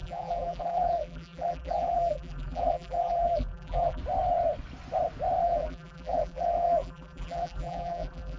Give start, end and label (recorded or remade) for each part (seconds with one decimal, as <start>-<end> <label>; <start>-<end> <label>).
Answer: 0.0-4.0 remade; 4.0-5.4 recorded; 5.4-8.4 remade